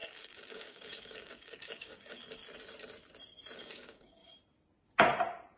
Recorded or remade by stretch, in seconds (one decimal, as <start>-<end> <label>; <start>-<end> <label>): 0.0-2.4 remade; 2.4-3.6 recorded; 3.6-4.2 remade; 4.2-5.6 recorded